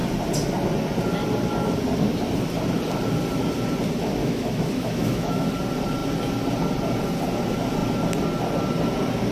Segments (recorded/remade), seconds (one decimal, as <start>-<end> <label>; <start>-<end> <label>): 0.0-4.2 recorded; 4.2-5.5 remade; 5.5-9.3 recorded